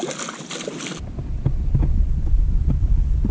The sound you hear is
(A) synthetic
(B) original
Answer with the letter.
B